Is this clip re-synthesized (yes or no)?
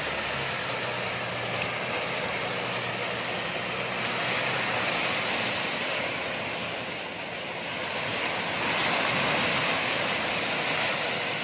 no